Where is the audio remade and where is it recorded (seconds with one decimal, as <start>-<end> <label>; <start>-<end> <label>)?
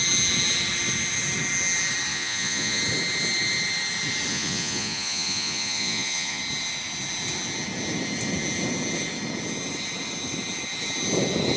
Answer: 0.0-2.1 recorded; 2.1-2.8 remade; 2.8-4.3 recorded; 4.3-6.4 remade; 6.4-11.6 recorded